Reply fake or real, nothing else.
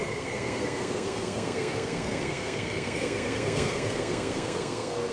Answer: fake